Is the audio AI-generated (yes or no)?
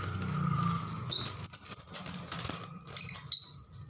no